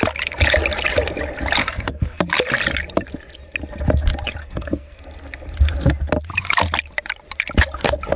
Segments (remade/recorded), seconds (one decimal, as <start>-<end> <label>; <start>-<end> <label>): 0.0-1.6 recorded; 1.6-2.2 remade; 2.2-4.4 recorded; 4.4-5.0 remade; 5.0-8.2 recorded